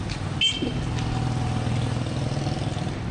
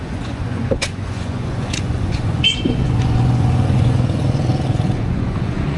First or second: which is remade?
second